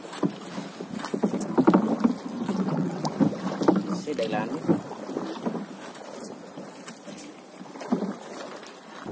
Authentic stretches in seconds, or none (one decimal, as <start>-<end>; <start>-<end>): 0.0-2.3; 3.1-9.1